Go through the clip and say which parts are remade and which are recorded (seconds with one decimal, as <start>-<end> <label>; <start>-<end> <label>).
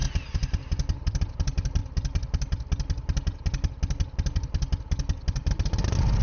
0.0-6.2 recorded